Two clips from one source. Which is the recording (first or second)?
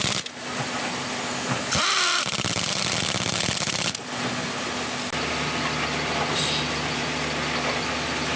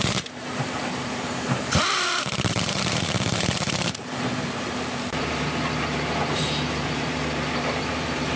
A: first